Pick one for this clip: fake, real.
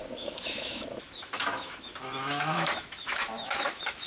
fake